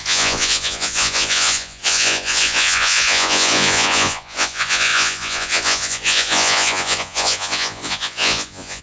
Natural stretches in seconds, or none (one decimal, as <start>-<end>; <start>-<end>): none